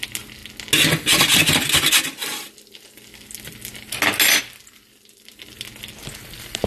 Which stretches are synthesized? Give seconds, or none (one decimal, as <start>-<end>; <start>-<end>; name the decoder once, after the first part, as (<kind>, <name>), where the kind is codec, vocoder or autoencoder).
none